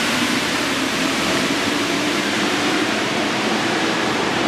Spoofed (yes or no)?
yes